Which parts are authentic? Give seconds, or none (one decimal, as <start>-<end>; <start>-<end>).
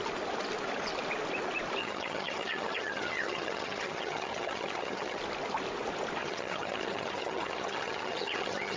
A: 0.0-1.8; 5.2-6.2